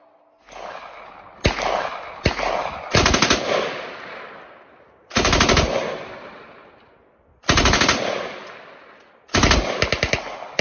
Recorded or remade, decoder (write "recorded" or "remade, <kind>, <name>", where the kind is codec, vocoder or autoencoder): recorded